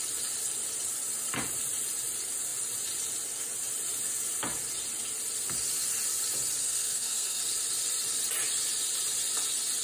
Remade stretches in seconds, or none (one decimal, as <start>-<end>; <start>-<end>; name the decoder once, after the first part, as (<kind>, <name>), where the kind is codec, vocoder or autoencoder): 6.6-7.4 (codec, SNAC)